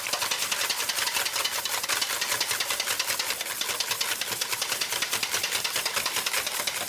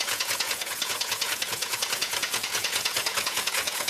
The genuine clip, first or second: first